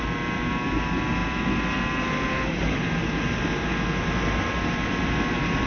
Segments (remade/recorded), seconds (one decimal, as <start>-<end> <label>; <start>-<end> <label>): 0.0-5.7 recorded